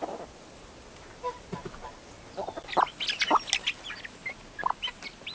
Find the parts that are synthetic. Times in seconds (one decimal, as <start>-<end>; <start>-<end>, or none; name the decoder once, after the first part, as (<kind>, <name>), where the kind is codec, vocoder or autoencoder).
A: none